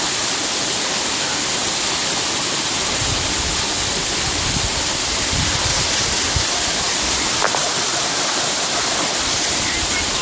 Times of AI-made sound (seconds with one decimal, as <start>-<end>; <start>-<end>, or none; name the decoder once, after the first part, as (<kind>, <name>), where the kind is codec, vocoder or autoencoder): none